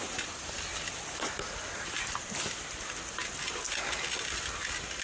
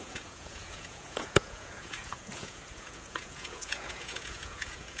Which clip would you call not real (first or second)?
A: second